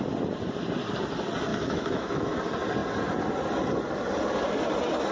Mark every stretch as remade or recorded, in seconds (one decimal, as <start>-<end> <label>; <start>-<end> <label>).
0.0-1.5 recorded; 1.5-2.3 remade; 2.3-5.1 recorded